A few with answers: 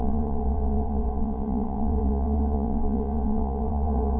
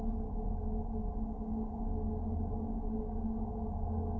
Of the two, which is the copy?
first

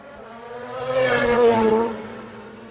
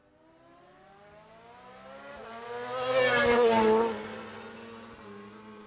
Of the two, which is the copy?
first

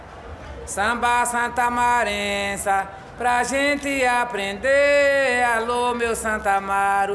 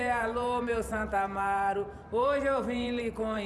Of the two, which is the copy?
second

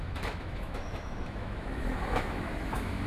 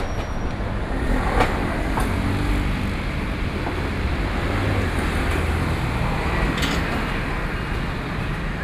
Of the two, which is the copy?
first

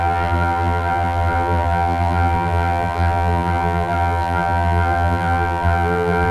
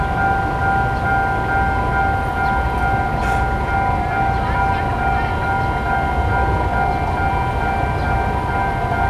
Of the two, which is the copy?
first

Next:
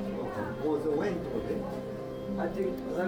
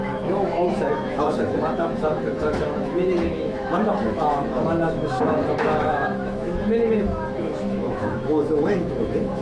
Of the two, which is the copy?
second